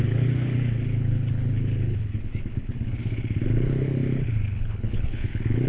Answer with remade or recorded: remade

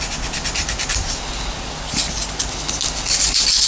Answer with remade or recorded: recorded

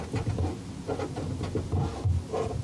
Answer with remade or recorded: recorded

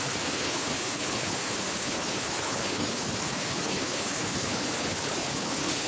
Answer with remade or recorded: remade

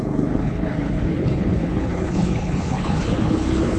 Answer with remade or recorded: remade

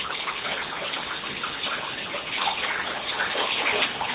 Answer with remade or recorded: remade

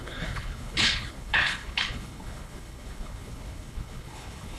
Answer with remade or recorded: remade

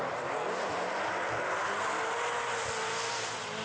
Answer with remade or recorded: recorded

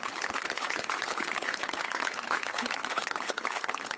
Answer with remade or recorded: remade